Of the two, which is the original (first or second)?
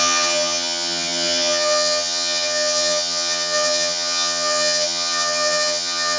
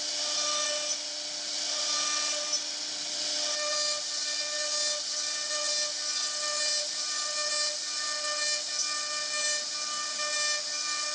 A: second